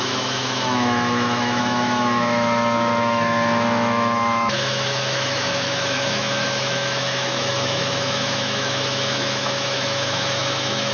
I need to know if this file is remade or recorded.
remade